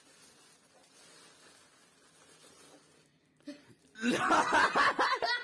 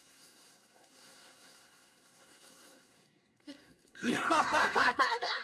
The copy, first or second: second